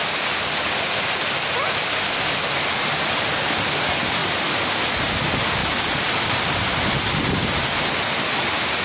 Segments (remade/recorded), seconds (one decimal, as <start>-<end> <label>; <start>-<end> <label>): 0.0-4.2 recorded; 4.2-4.8 remade; 4.8-5.6 recorded; 5.6-6.2 remade; 6.2-8.8 recorded